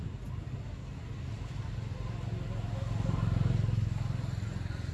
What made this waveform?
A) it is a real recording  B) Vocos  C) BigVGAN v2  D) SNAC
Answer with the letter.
A